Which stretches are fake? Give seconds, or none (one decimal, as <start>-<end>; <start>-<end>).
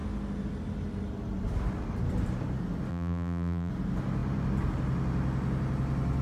2.9-3.7